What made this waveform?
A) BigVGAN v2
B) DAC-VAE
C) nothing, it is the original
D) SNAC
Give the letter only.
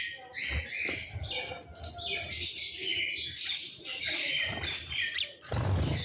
C